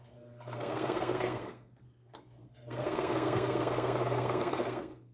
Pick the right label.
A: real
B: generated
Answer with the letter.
B